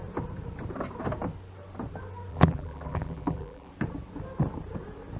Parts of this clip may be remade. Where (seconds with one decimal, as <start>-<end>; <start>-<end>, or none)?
2.3-3.7